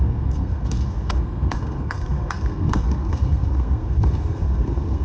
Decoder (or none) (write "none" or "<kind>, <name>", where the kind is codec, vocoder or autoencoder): codec, SNAC